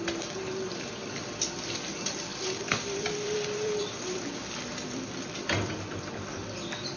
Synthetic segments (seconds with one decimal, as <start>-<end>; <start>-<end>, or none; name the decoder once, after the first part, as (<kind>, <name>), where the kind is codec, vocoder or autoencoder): 1.0-1.9 (vocoder, BigVGAN v2); 2.3-4.2; 4.8-5.7

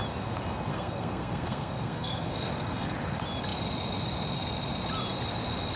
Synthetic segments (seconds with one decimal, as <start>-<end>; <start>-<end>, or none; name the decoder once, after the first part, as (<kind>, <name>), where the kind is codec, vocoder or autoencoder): 0.7-2.5 (codec, SNAC)

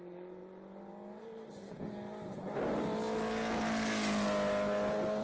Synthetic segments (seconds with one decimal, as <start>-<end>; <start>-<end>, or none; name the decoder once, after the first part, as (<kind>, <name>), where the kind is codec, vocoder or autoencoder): none

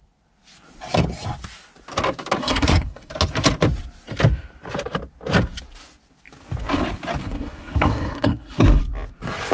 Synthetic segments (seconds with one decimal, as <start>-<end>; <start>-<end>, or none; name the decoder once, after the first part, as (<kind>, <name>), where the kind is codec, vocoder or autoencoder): 2.4-3.1 (codec, SNAC); 7.2-8.8